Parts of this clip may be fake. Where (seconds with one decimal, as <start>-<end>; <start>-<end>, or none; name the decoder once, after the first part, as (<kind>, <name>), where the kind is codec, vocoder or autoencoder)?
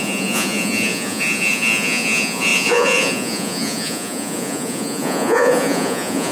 0.0-6.3 (vocoder, Vocos)